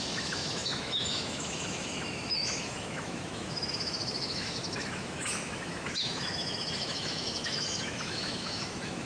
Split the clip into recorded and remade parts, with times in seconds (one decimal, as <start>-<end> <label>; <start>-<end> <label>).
0.0-9.1 remade